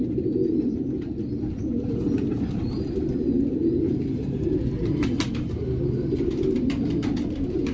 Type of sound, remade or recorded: recorded